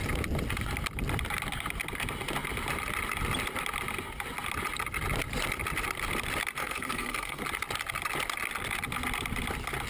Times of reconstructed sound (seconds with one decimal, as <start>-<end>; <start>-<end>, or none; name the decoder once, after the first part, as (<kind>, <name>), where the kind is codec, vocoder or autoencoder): 6.6-7.4 (codec, SNAC)